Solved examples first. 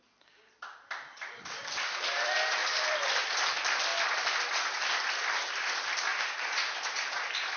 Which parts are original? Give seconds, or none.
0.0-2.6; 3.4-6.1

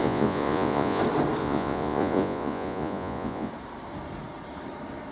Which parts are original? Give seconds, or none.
1.0-1.4; 3.5-5.1